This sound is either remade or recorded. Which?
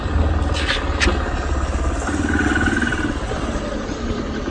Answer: recorded